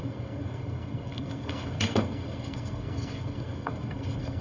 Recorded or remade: remade